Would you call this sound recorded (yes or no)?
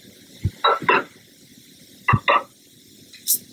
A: yes